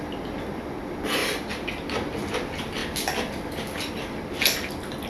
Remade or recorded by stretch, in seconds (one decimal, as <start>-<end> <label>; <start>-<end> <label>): 0.0-5.1 recorded